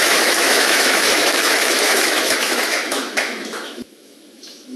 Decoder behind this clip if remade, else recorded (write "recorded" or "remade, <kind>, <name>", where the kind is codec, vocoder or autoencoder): remade, autoencoder, DAC-VAE